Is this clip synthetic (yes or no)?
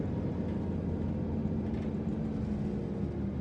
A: no